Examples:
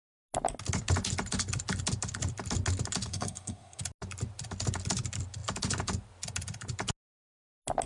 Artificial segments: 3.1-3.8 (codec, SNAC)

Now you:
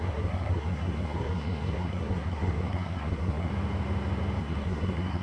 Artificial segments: 0.0-3.5 (codec, SNAC); 4.4-5.2

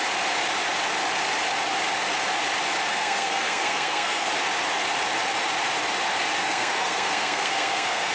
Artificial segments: 2.9-4.3 (codec, SNAC); 6.4-8.1

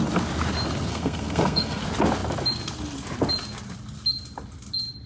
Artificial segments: 0.9-1.8 (codec, SNAC)

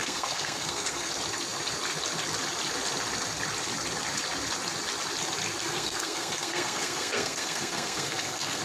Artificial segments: 0.0-1.1 (codec, SNAC); 5.6-8.6

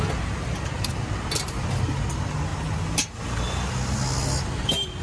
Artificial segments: none